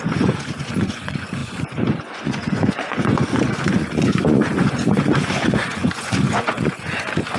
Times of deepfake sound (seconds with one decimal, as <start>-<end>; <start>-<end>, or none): 0.0-7.4

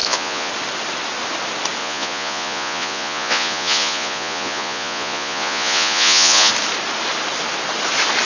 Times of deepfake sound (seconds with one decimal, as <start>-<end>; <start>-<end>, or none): 0.0-0.5; 1.8-6.5

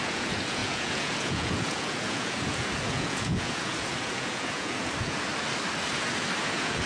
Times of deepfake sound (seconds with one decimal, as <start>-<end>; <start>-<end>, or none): 0.0-5.3; 6.4-6.9

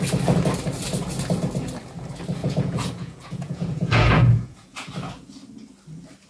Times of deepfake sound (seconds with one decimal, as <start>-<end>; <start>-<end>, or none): 2.4-4.9